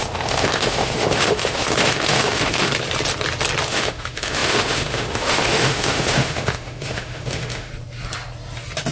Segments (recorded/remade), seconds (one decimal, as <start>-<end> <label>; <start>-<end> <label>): 0.0-2.7 remade; 2.7-3.7 recorded; 3.7-7.7 remade; 7.7-8.9 recorded